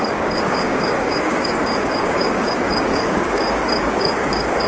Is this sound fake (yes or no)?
yes